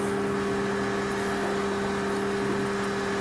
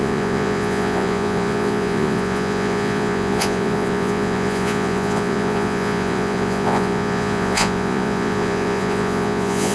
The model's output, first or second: second